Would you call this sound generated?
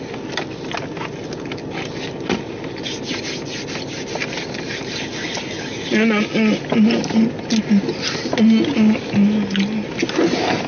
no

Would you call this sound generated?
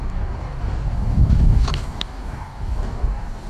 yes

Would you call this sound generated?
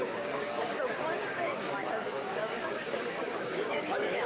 yes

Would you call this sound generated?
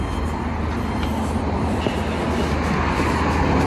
no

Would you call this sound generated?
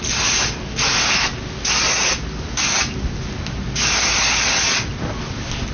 no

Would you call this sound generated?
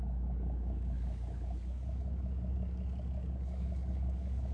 yes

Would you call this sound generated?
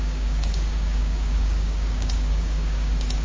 yes